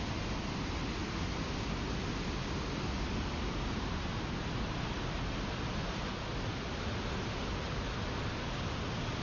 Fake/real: real